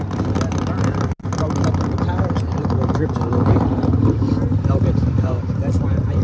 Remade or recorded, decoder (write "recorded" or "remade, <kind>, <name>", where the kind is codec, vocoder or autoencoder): remade, vocoder, BigVGAN v2